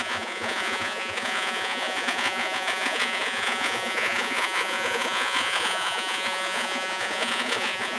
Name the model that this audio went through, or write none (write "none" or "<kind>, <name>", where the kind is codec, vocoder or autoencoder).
vocoder, Vocos